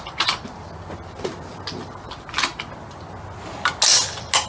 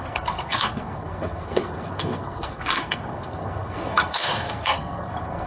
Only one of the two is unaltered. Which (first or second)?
first